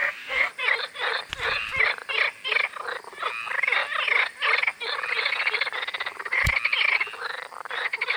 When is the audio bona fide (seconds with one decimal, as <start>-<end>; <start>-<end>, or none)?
0.5-8.2